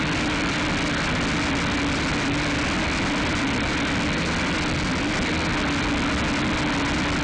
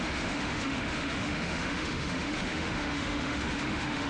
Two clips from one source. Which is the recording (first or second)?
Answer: first